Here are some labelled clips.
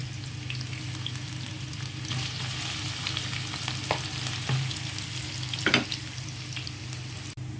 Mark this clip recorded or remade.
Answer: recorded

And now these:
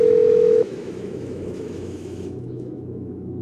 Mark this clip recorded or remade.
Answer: remade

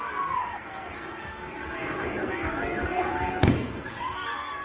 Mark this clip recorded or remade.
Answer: remade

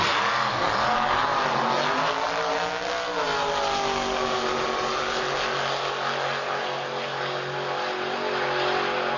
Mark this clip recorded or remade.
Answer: recorded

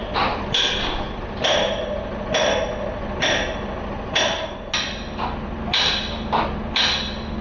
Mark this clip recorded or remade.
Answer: recorded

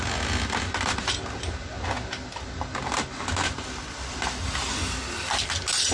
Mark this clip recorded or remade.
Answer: recorded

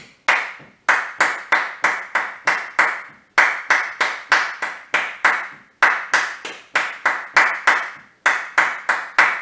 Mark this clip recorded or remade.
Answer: recorded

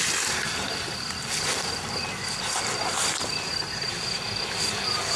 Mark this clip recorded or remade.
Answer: remade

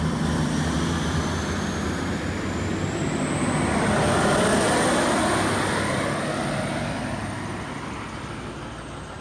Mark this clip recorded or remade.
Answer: recorded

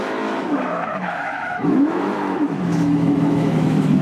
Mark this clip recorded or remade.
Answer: remade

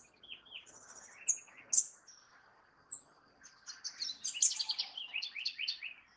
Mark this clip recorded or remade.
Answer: recorded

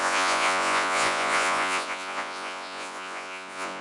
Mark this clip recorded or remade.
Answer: remade